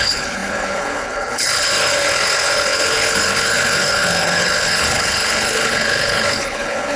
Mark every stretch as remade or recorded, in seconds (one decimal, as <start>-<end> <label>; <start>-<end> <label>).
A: 0.0-7.0 remade